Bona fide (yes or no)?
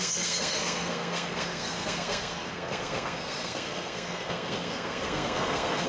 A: no